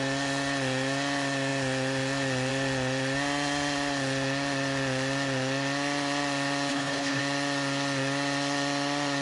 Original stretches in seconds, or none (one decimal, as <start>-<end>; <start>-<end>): 0.0-6.7; 7.2-9.2

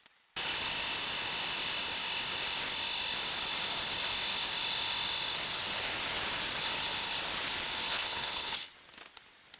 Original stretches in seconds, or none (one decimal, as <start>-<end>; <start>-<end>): 0.0-7.9; 8.7-9.6

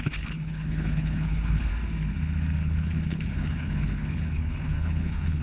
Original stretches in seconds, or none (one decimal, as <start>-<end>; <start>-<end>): 1.7-2.6

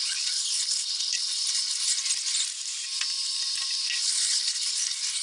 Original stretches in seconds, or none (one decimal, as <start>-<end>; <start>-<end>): 2.0-4.0

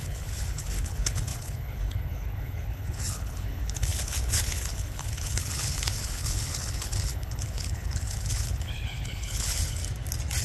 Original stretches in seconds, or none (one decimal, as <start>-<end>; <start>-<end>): 9.8-10.4

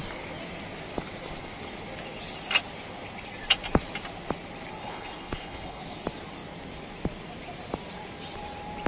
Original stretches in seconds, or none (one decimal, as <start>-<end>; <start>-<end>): 0.0-4.8; 5.8-8.9

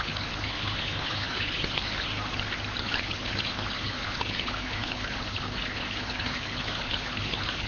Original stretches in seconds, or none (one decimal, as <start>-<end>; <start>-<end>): 2.1-2.8